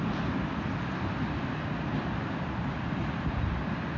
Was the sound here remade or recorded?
recorded